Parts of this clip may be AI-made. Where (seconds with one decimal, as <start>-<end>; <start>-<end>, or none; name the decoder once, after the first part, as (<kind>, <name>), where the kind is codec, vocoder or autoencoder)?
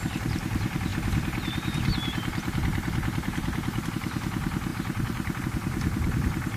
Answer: 0.9-3.9 (vocoder, BigVGAN v2); 4.7-5.4